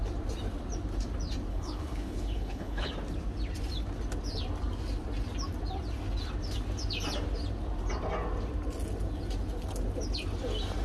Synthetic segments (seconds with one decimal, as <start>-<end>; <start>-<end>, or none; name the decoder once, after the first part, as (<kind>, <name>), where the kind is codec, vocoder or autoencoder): 1.5-2.9 (codec, HILCodec)